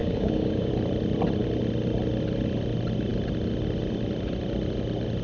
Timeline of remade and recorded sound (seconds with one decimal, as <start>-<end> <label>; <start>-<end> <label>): 0.0-0.7 remade; 0.7-5.2 recorded

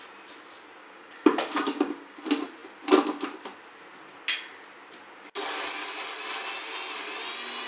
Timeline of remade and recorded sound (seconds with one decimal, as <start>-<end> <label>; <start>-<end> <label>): 0.0-0.8 recorded; 0.8-2.2 remade; 2.2-7.7 recorded